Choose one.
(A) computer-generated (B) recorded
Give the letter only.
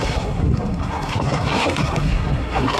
A